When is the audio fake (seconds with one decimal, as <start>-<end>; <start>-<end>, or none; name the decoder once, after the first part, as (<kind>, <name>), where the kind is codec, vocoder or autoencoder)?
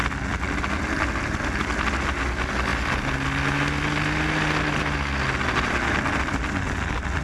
none